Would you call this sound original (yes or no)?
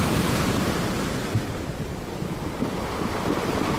yes